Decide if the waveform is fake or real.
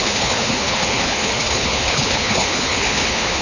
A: fake